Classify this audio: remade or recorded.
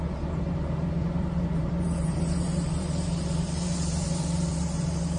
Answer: remade